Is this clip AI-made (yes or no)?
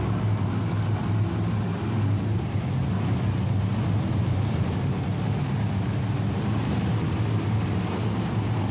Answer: no